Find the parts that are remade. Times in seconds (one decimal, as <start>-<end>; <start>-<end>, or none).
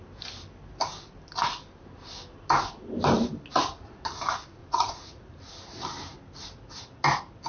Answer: 4.6-5.5